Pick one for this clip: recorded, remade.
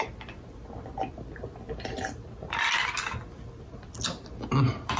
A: recorded